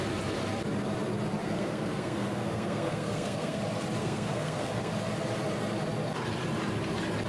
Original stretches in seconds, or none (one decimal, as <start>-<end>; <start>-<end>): 0.0-1.4; 3.6-4.0; 4.9-7.3